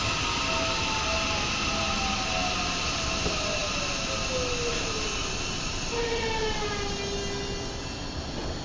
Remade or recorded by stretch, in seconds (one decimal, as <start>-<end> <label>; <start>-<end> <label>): 0.0-8.6 recorded